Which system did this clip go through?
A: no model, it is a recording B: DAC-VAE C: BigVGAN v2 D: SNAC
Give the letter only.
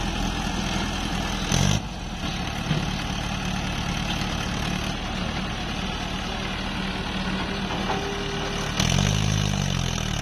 A